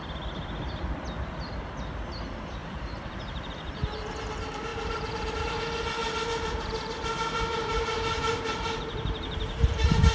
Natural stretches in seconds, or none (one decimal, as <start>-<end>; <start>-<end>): 0.0-2.6; 3.5-4.7; 5.3-6.0